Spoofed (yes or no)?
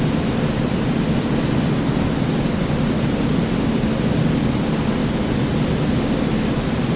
no